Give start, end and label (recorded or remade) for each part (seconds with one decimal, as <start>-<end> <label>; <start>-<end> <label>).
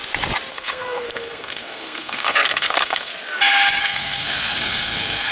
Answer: 0.0-0.5 recorded; 0.5-3.1 remade; 3.1-3.8 recorded; 3.8-5.3 remade